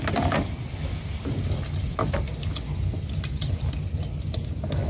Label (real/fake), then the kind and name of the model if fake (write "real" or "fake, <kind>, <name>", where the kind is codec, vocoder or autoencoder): real